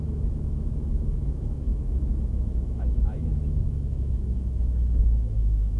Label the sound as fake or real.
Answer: fake